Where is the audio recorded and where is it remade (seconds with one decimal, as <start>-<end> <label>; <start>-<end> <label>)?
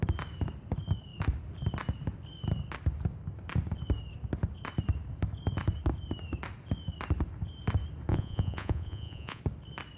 0.0-8.1 recorded; 8.1-9.4 remade; 9.4-10.0 recorded